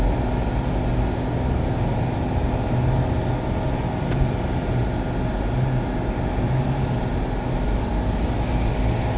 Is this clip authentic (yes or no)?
yes